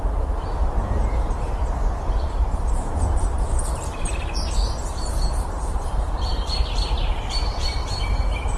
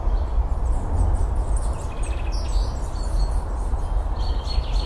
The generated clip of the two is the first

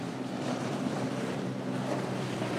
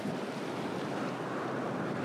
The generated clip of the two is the first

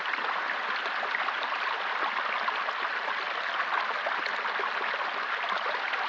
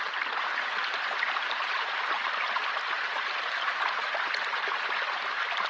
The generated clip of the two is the second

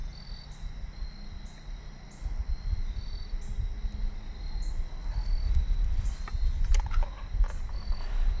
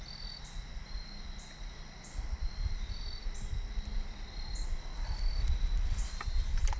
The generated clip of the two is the second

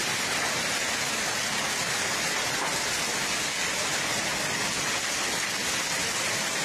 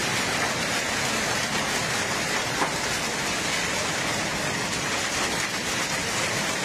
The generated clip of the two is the second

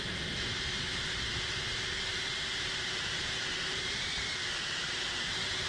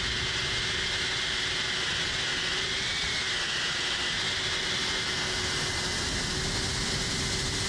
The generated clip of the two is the first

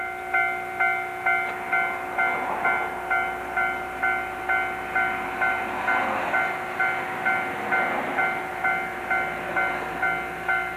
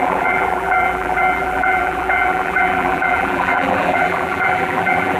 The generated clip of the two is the second